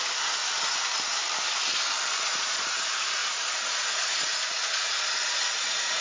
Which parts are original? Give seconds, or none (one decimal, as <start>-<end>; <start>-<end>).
0.4-2.2